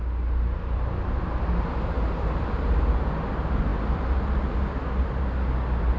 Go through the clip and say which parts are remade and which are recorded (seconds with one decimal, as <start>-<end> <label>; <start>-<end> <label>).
0.0-6.0 recorded